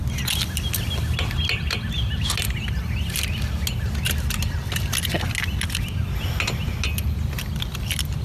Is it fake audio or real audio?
real